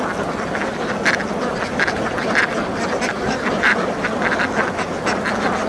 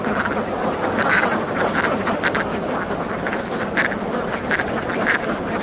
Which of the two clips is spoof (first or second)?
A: second